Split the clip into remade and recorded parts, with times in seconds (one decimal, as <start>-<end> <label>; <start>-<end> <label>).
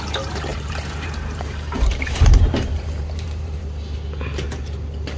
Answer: 0.0-0.5 recorded; 0.5-3.6 remade; 3.6-5.2 recorded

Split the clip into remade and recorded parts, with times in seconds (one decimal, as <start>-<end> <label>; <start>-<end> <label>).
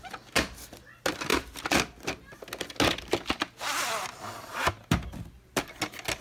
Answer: 0.0-6.2 recorded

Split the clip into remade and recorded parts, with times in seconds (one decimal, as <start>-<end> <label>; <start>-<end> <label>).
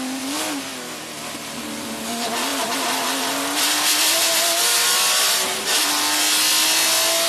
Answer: 0.0-2.5 recorded; 2.5-3.6 remade; 3.6-7.3 recorded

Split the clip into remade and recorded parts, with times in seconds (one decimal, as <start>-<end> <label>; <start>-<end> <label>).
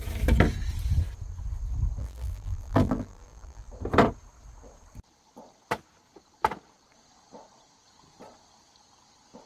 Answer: 0.0-2.0 recorded; 2.0-3.7 remade; 3.7-9.5 recorded